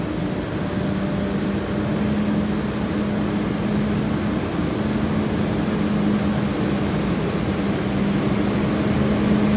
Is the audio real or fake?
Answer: real